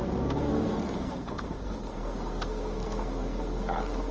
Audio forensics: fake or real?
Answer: fake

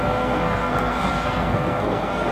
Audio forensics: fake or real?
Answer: fake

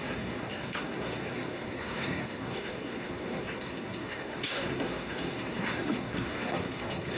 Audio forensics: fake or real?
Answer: fake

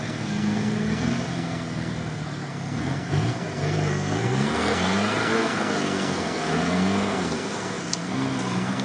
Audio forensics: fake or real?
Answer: fake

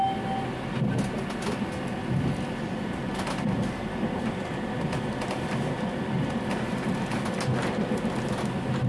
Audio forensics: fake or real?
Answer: real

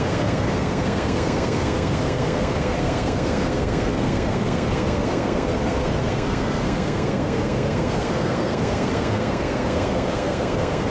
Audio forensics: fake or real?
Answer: fake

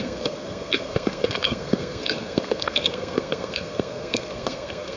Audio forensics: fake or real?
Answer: fake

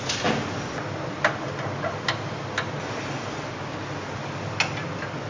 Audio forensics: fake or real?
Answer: real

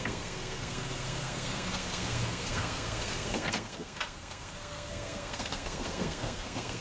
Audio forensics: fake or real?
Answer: fake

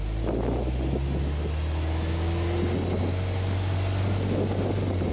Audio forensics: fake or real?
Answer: real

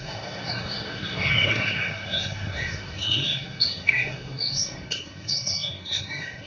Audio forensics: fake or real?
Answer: fake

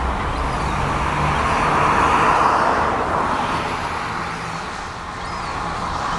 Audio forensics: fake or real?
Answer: real